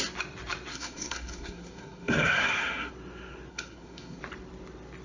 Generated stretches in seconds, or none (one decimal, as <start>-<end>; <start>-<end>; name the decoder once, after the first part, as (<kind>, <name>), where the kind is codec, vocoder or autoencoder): 0.7-2.9 (codec, SNAC); 3.5-4.2